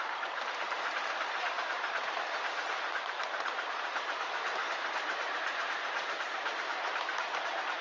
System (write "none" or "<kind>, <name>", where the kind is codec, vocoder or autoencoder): vocoder, BigVGAN v2